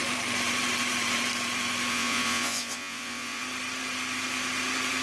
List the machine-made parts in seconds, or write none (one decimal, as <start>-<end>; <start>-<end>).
1.9-3.4